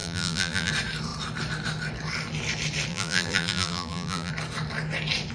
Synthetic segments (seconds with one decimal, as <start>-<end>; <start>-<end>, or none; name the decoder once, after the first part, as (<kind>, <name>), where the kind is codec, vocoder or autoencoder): 0.0-0.7 (vocoder, BigVGAN v2); 2.9-4.3